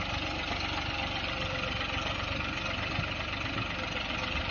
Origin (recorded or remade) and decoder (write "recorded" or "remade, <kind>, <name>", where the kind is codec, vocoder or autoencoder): recorded